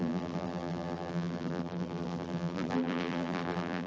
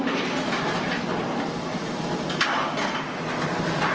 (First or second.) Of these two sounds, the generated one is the first